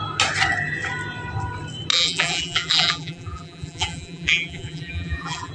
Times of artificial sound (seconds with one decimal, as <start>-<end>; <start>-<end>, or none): 1.9-5.5